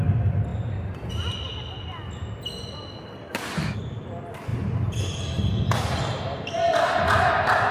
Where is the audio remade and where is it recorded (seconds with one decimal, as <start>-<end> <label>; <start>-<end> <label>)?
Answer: 0.0-7.7 recorded